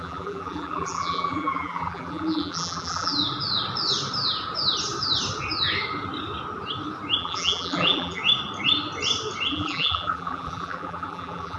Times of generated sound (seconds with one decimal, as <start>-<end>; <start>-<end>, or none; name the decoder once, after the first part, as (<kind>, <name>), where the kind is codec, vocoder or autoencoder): 0.0-3.1 (vocoder, BigVGAN v2); 7.2-8.2; 9.5-11.6